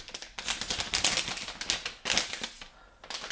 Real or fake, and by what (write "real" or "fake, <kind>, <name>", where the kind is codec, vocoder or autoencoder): real